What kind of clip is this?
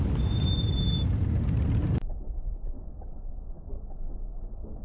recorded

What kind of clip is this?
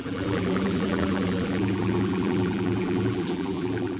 remade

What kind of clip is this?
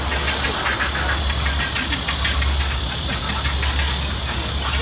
recorded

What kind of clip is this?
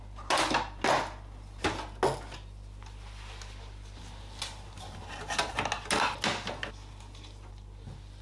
recorded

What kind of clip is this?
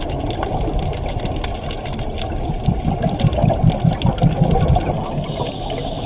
recorded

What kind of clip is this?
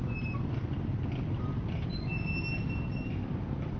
recorded